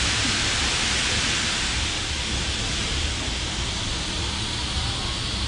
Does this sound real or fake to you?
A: real